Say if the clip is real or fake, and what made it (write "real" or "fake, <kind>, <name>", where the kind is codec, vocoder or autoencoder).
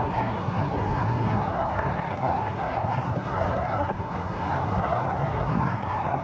fake, codec, SNAC